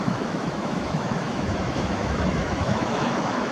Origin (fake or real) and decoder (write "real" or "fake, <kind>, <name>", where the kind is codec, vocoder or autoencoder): fake, autoencoder, DAC-VAE